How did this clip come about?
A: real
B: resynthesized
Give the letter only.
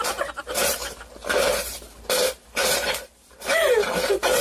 B